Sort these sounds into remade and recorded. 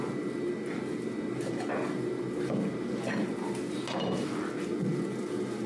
recorded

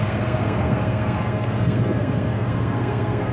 remade